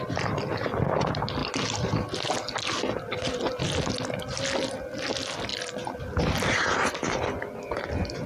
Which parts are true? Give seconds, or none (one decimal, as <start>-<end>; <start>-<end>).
0.0-8.3